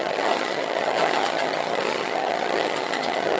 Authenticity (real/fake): fake